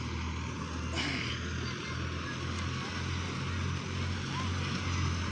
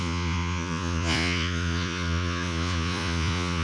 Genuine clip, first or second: first